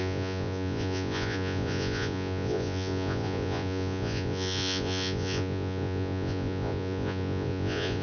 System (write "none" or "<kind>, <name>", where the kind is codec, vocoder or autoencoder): vocoder, Vocos